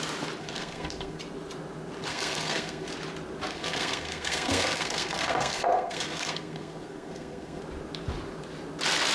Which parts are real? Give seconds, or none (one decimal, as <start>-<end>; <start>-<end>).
0.0-0.4; 1.2-2.1; 2.9-3.5; 7.6-9.1